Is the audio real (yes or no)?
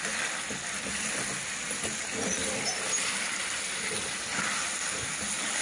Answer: yes